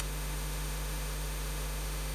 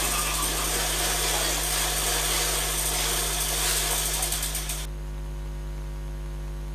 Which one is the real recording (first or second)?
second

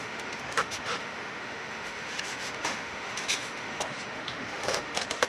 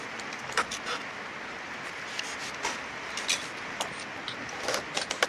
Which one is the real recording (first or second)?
second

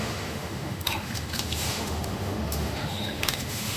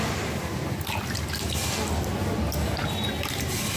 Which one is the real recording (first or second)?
second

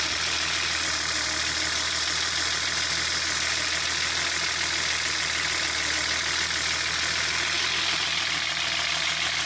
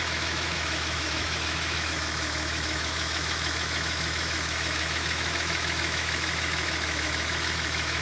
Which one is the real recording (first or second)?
first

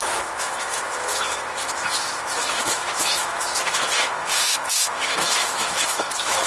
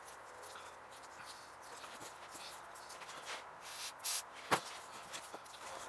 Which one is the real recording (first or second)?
second